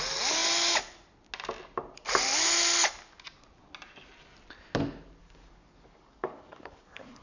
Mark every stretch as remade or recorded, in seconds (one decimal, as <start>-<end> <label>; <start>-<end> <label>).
0.0-5.2 recorded; 5.2-7.2 remade